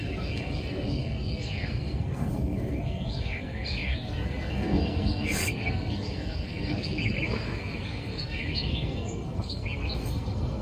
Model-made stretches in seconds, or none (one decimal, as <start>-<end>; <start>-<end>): 0.0-10.6